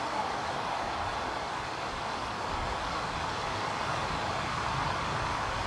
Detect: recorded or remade remade